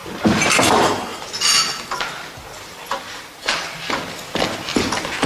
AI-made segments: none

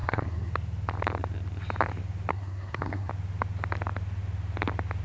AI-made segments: 0.0-0.5 (codec, SNAC); 2.3-3.1

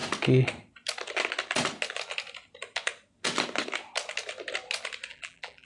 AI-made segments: 5.1-5.7 (vocoder, BigVGAN v2)

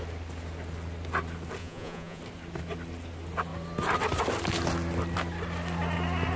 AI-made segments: 1.6-2.2 (vocoder, Vocos)

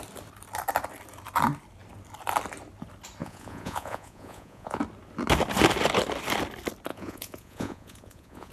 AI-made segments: 3.2-4.8 (vocoder, Vocos); 6.9-8.5